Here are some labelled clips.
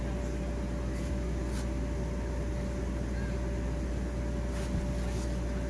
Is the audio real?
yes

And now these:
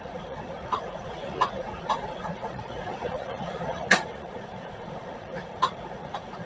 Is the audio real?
no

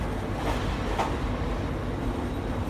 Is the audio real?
yes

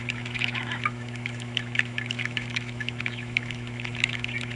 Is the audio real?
no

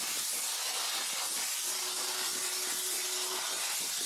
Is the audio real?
yes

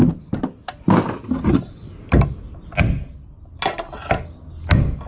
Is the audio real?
yes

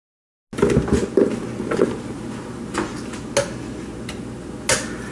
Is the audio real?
yes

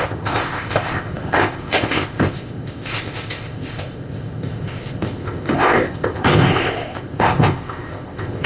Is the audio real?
no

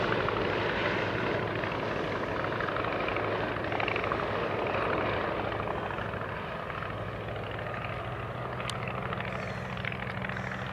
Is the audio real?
yes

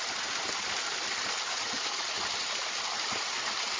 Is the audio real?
yes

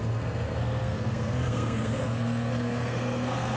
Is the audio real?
no